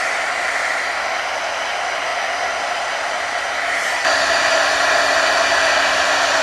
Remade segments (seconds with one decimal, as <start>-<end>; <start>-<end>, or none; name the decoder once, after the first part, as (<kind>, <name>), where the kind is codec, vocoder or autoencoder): none